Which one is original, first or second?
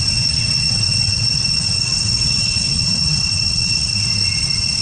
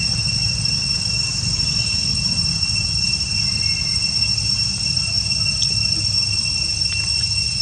second